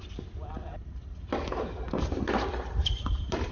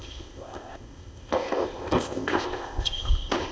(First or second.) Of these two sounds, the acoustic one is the first